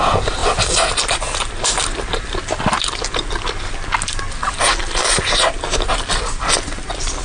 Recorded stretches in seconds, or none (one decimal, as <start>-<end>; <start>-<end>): 0.0-7.2